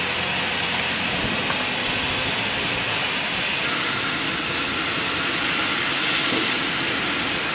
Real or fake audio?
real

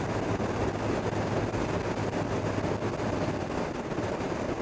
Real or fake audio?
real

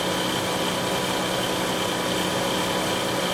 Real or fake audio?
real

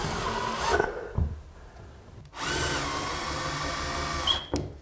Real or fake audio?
real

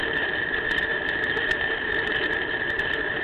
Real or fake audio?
fake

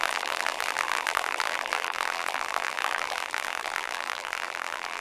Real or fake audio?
fake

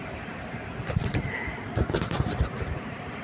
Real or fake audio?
fake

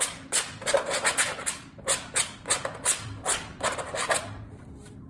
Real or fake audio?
real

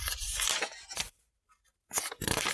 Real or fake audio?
fake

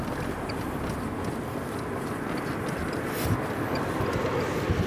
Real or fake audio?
real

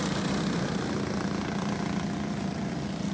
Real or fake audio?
real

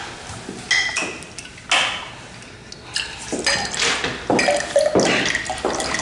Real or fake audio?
real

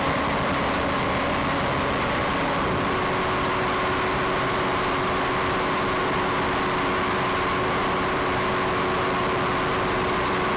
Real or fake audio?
real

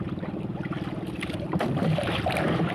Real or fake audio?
real